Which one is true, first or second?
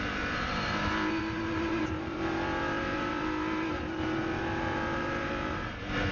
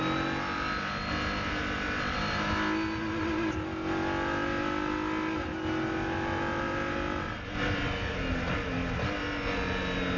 second